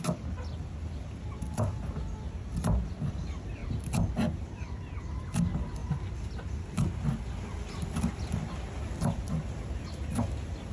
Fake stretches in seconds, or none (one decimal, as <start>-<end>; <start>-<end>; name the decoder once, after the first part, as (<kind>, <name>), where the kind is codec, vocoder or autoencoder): none